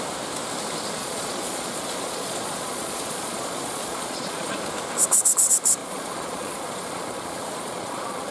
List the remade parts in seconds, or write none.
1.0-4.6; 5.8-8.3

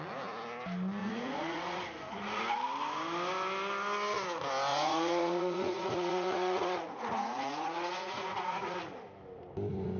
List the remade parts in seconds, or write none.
1.0-1.8; 4.7-8.8

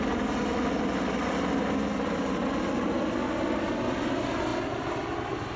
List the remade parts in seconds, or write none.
none

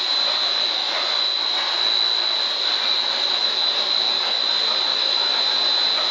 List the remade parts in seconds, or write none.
4.9-5.4

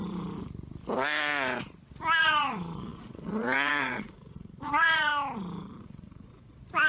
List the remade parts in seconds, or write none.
2.2-5.1; 5.8-6.9

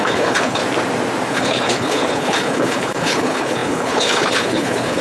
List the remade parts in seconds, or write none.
0.0-0.6; 1.3-5.0

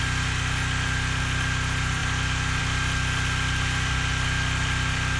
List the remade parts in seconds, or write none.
none